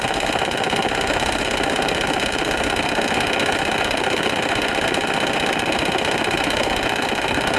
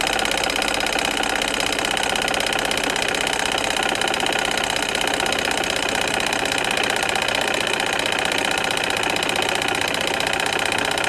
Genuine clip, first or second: second